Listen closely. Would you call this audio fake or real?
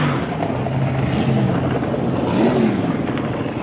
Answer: real